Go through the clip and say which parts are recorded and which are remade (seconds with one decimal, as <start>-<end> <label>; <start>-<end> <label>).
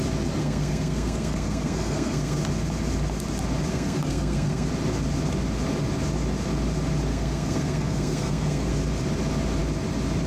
0.0-0.4 recorded; 0.4-2.4 remade; 2.4-3.7 recorded; 3.7-4.7 remade; 4.7-7.1 recorded; 7.1-8.7 remade; 8.7-10.3 recorded